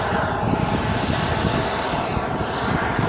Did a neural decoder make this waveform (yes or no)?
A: no